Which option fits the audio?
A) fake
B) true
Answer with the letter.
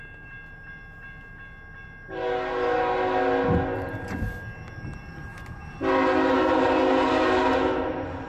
B